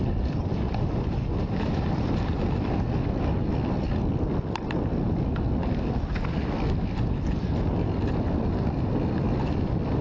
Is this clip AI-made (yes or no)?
no